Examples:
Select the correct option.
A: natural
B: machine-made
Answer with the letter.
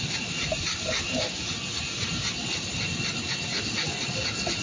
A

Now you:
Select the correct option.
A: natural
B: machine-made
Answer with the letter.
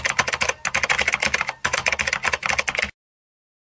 A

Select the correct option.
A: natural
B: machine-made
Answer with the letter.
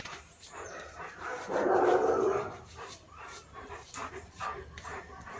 B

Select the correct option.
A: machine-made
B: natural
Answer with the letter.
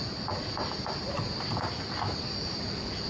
B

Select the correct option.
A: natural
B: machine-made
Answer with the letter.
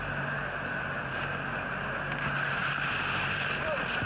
A